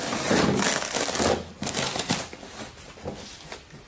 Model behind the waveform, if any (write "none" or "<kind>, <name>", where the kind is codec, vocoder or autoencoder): none